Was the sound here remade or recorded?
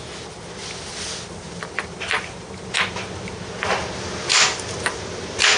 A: recorded